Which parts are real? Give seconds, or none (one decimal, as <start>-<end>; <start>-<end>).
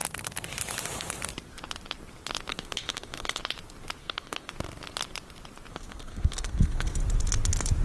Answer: 0.0-2.5; 3.4-4.0; 4.5-5.7; 7.0-7.8